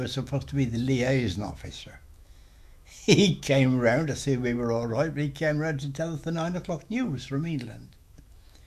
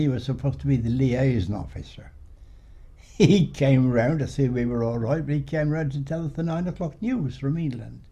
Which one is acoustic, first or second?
second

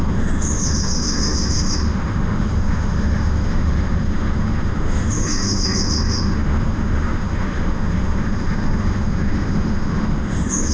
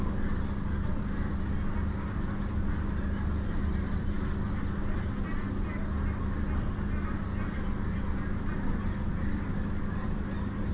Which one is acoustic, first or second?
second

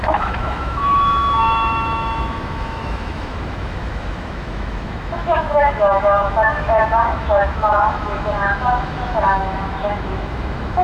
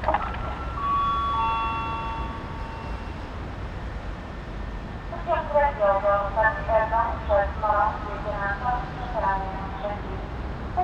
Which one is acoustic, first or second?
second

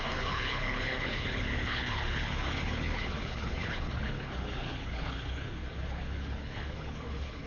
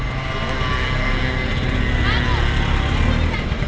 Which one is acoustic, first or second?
second